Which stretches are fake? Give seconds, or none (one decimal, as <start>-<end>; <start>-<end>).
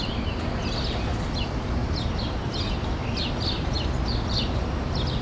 none